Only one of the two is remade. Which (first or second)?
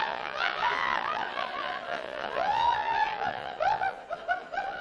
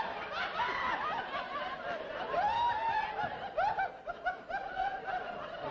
first